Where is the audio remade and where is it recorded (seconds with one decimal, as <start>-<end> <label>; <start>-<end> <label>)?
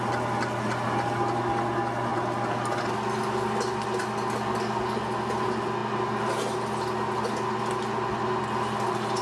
0.0-9.2 recorded